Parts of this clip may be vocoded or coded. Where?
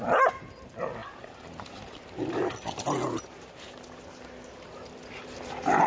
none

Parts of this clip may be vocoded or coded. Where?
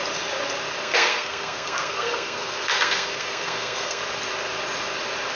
0.8-4.0 (codec, SNAC)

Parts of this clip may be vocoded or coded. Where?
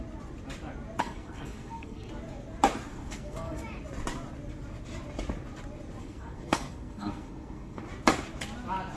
1.0-2.1 (codec, SNAC); 2.9-3.6; 6.0-7.8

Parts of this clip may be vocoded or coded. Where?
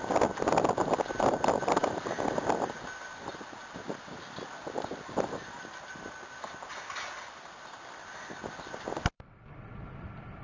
none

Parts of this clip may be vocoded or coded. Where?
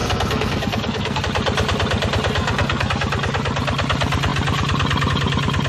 0.0-1.2 (codec, SNAC); 2.4-2.9